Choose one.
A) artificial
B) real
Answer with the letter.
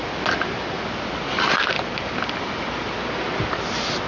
B